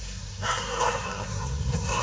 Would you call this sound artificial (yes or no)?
yes